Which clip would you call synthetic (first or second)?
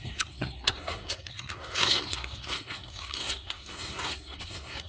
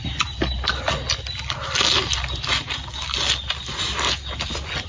first